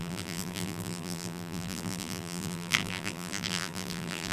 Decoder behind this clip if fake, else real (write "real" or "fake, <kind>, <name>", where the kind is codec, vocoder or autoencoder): fake, vocoder, BigVGAN v2